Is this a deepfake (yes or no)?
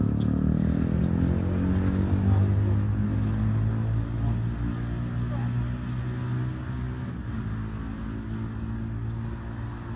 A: no